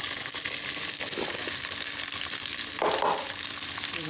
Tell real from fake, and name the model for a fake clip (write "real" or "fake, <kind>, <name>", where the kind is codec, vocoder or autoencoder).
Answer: real